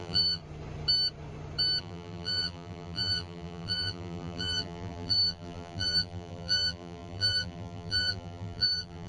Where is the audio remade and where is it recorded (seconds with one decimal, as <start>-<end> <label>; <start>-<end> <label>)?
0.0-0.4 remade; 0.4-1.8 recorded; 1.8-9.1 remade